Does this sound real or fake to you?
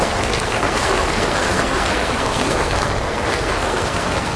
fake